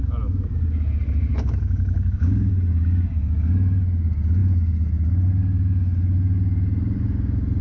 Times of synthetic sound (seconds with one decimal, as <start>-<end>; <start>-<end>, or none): 1.3-2.3